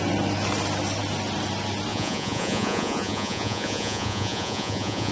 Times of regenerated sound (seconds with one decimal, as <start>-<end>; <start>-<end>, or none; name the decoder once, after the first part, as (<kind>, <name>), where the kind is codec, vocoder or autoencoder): 1.9-5.1 (vocoder, Vocos)